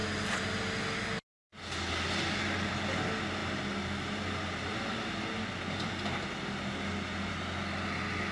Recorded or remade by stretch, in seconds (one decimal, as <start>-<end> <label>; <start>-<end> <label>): 0.0-8.3 recorded

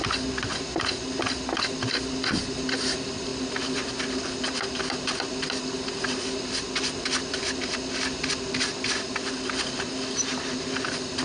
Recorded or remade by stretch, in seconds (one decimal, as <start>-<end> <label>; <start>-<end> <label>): 0.0-11.2 recorded